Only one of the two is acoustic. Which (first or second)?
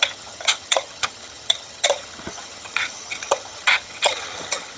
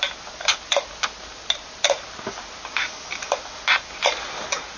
second